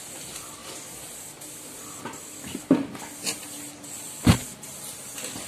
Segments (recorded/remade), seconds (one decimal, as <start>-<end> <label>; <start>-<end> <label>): 0.0-5.5 recorded